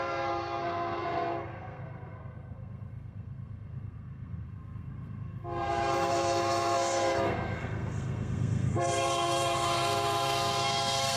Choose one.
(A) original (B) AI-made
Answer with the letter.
B